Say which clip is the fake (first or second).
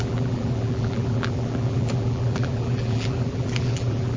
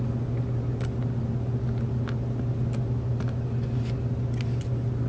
first